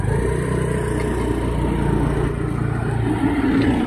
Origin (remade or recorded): recorded